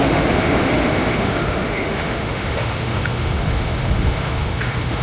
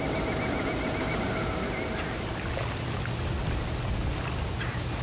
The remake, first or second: first